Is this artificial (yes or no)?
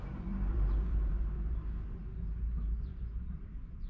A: yes